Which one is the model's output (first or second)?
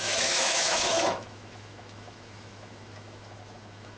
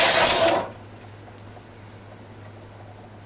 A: first